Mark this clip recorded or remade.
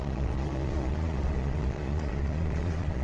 remade